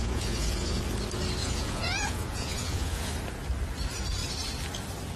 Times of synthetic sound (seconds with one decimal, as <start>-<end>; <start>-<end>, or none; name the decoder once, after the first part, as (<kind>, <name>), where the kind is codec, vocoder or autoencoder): 0.0-0.8 (vocoder, Vocos); 1.4-3.1

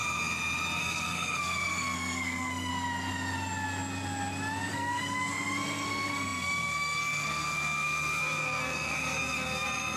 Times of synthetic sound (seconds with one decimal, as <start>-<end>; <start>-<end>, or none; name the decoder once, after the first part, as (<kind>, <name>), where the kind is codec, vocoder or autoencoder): 0.8-2.7 (codec, SNAC); 4.7-10.0